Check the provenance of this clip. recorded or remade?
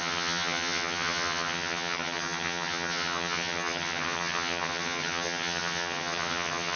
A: remade